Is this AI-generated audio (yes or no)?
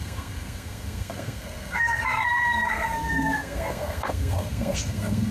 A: yes